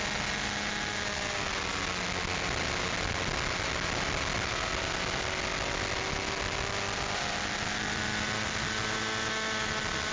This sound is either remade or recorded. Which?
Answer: recorded